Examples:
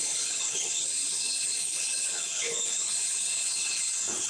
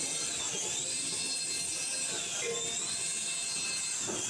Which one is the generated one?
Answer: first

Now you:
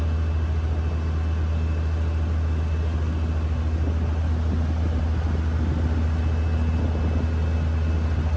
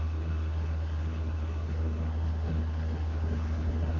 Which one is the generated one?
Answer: second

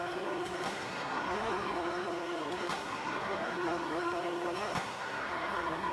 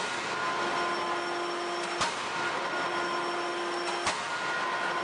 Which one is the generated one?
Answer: first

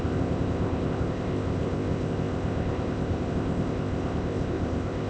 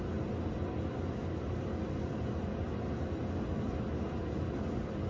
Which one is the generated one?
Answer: first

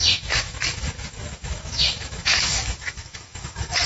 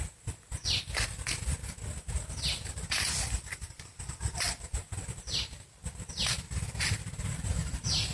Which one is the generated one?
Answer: first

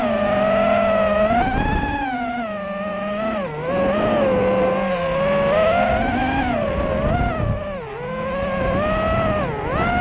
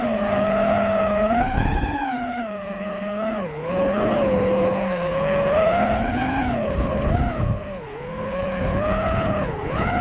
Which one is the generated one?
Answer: second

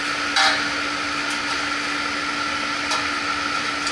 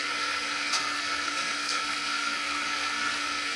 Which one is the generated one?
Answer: second